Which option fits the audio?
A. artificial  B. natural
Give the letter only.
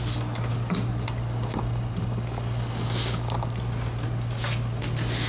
B